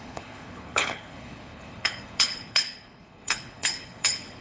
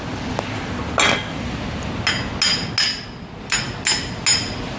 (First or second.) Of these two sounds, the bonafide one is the second